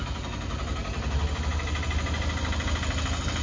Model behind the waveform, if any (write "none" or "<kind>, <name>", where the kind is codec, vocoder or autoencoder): none